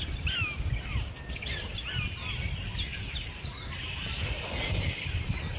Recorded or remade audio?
recorded